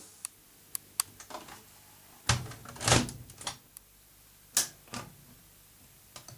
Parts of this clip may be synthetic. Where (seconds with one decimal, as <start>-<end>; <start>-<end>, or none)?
none